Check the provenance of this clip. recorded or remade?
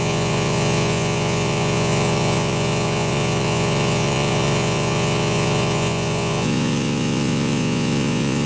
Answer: remade